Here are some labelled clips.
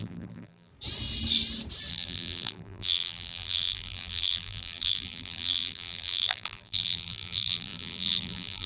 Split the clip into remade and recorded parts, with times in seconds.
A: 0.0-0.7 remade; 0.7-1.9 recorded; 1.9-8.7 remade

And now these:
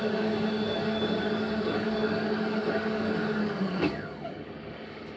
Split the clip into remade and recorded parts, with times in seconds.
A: 0.0-5.2 remade